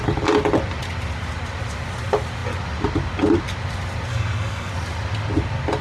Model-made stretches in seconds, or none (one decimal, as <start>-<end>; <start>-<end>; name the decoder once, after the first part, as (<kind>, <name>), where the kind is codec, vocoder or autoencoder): 4.1-4.7 (codec, DAC)